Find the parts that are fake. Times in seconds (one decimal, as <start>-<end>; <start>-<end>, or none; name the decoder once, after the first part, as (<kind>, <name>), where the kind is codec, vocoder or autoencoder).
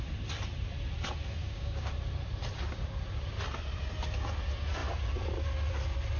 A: 1.4-1.9 (codec, DAC)